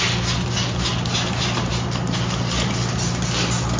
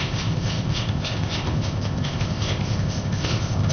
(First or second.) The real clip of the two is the first